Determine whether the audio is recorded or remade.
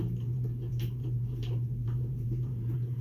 remade